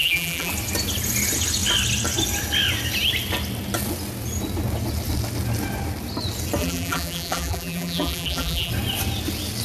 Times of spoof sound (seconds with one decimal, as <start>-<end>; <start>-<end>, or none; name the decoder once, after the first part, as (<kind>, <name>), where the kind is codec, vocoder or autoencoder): 0.0-0.5 (vocoder, BigVGAN v2); 6.6-8.7